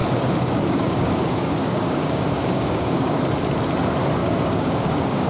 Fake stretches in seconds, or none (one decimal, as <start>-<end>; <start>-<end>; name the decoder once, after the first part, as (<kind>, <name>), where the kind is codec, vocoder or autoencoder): 0.0-3.2 (codec, DAC); 4.2-5.3